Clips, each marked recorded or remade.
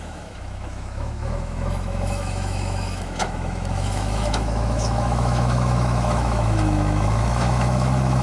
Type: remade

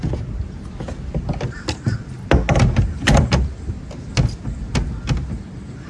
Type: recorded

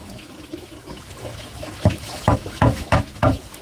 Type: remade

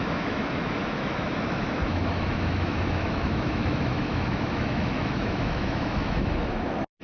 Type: remade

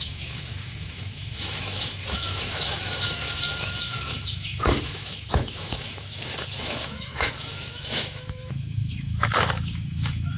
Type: remade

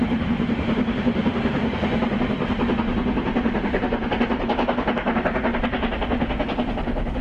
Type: recorded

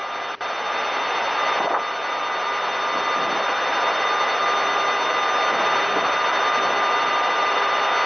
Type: recorded